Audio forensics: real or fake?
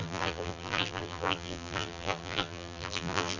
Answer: fake